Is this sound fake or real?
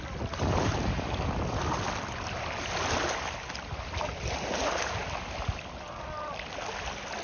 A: real